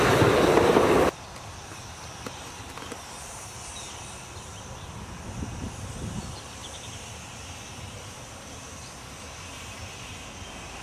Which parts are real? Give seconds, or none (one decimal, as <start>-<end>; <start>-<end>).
none